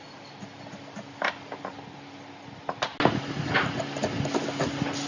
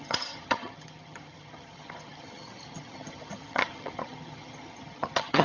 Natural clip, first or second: first